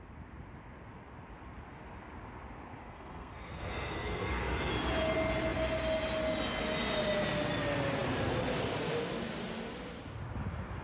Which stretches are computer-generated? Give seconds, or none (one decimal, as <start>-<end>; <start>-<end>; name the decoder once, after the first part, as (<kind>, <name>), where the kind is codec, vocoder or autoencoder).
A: 2.8-4.7 (codec, SNAC)